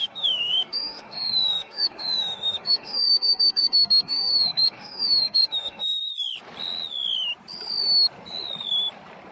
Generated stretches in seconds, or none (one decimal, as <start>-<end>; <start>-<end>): 0.0-6.0